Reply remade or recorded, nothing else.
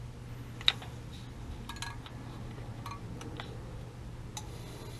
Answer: recorded